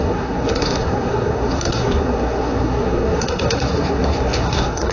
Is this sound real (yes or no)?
no